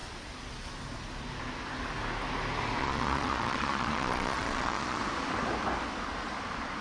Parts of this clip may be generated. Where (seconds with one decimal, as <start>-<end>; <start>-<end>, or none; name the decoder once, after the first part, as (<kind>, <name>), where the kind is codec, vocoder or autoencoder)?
2.8-5.0 (vocoder, Vocos)